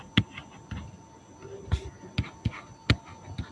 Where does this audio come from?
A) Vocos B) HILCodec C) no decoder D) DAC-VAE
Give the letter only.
C